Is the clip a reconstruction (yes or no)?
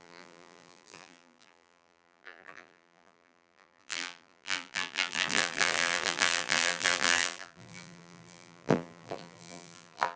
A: yes